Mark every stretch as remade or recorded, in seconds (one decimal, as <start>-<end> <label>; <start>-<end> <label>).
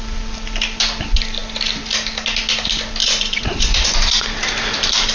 0.0-3.0 recorded; 3.0-4.1 remade; 4.1-5.1 recorded